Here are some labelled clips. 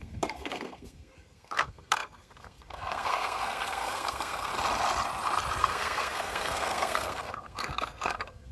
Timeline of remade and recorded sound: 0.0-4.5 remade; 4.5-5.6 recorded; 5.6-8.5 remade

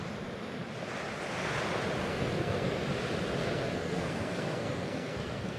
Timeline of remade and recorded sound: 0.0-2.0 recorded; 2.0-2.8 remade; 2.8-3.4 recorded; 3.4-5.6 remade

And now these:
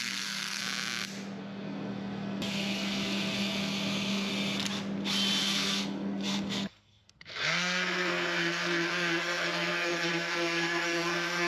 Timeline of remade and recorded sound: 0.0-0.6 remade; 0.6-1.4 recorded; 1.4-4.3 remade; 4.3-5.4 recorded; 5.4-11.5 remade